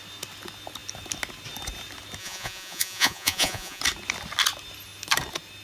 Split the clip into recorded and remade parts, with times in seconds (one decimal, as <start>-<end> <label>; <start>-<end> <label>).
0.0-2.2 recorded; 2.2-3.8 remade; 3.8-5.6 recorded